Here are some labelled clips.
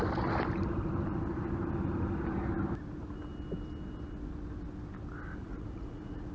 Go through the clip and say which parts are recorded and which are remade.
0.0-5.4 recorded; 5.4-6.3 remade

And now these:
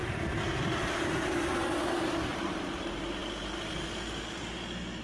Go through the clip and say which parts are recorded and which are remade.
0.0-5.0 recorded